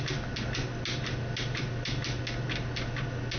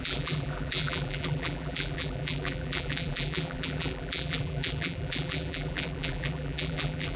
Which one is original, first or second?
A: first